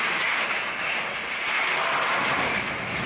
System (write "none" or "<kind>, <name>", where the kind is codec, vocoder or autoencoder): none